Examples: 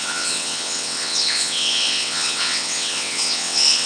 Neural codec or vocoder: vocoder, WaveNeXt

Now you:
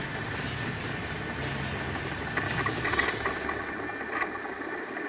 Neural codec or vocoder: none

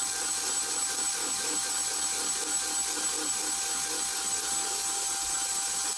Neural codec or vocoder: none